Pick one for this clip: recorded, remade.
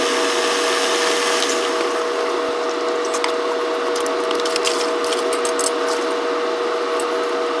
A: recorded